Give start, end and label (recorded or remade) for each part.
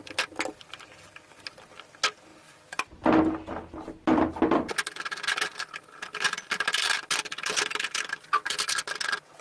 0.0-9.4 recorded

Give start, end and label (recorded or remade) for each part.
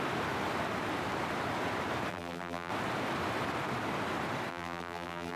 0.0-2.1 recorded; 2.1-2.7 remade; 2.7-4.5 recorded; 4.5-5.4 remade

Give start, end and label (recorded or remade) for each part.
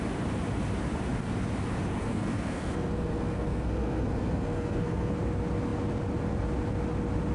0.0-2.0 recorded; 2.0-5.1 remade; 5.1-7.3 recorded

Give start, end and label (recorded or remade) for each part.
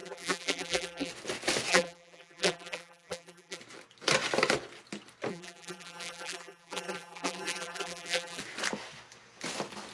0.0-1.1 remade; 1.1-1.7 recorded; 1.7-3.6 remade; 3.6-5.3 recorded; 5.3-8.4 remade; 8.4-9.9 recorded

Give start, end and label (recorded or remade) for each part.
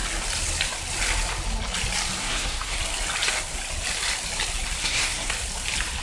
0.0-2.2 recorded; 2.2-2.8 remade; 2.8-4.8 recorded; 4.8-5.3 remade; 5.3-6.0 recorded